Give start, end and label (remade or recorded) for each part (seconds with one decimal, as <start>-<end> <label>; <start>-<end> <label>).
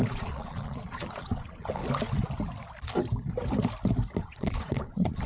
0.0-1.8 remade; 1.8-4.2 recorded; 4.2-5.3 remade